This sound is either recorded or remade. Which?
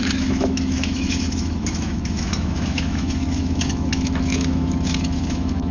remade